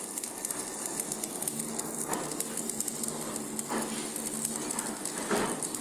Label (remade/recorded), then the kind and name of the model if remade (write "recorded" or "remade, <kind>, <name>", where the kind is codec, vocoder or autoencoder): recorded